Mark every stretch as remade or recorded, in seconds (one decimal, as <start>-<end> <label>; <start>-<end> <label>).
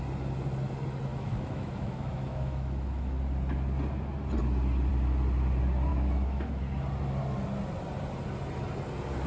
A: 0.0-1.1 recorded; 1.1-3.2 remade; 3.2-5.9 recorded; 5.9-6.6 remade; 6.6-9.3 recorded